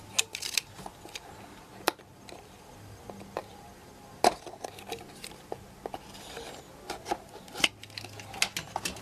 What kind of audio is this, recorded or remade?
recorded